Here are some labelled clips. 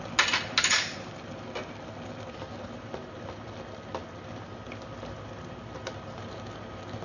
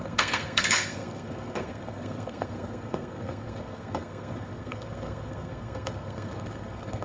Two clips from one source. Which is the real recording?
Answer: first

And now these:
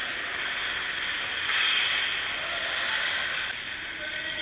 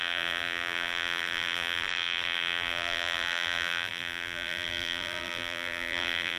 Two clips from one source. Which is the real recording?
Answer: first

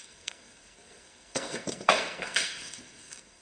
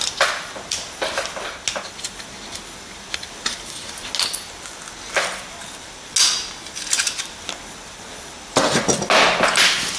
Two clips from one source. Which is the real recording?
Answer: second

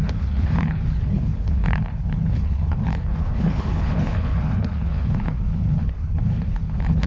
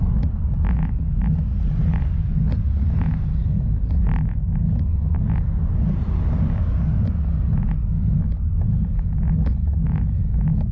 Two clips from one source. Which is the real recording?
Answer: second